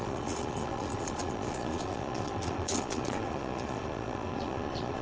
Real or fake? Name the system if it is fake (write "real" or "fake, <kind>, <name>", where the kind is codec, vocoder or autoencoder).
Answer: fake, vocoder, Vocos